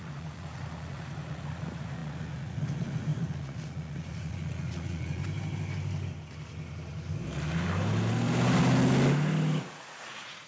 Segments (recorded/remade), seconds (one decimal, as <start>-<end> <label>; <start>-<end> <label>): 0.0-5.2 remade; 5.2-9.6 recorded; 9.6-10.5 remade